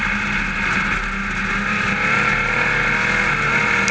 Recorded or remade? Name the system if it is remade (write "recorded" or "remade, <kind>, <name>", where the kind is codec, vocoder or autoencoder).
recorded